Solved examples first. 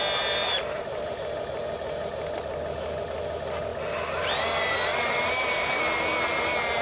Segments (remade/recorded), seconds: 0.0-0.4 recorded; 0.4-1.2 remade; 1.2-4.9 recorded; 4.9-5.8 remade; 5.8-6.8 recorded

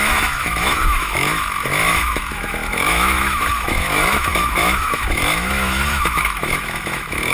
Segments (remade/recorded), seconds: 0.0-7.3 remade

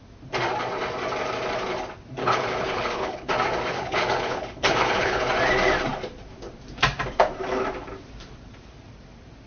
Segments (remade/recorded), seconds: 0.0-2.2 recorded; 2.2-3.3 remade; 3.3-3.7 recorded; 3.7-5.3 remade; 5.3-9.5 recorded

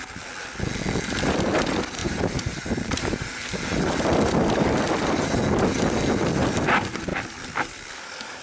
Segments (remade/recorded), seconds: 0.0-2.0 recorded; 2.0-3.4 remade; 3.4-8.4 recorded

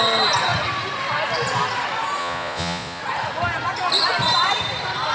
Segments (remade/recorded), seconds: 0.0-2.2 recorded; 2.2-3.0 remade; 3.0-5.1 recorded

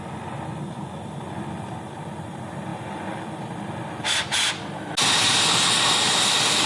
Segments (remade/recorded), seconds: 0.0-6.7 recorded